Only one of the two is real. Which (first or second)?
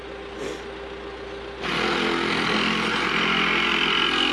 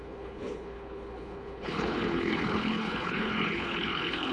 first